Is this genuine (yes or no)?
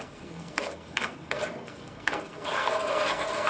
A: no